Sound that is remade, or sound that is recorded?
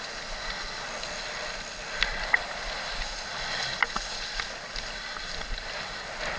recorded